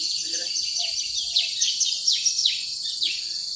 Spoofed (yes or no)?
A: yes